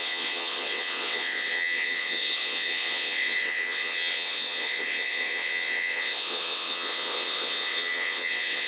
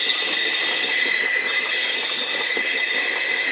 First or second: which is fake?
first